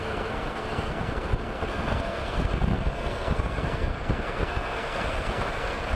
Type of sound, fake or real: fake